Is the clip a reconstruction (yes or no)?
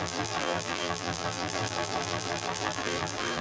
yes